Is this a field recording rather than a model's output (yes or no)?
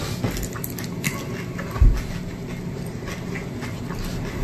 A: yes